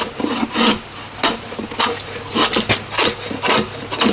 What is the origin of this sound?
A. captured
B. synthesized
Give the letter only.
A